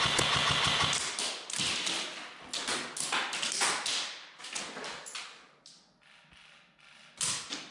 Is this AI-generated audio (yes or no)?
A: no